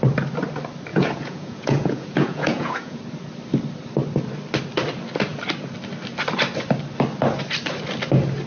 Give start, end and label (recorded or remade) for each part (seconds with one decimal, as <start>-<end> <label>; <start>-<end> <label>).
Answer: 0.0-0.9 recorded; 0.9-3.0 remade; 3.0-8.5 recorded